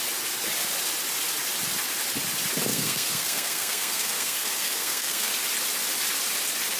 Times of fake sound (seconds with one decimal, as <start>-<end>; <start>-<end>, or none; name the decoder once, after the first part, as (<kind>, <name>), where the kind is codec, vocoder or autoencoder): 2.7-5.3 (codec, SNAC)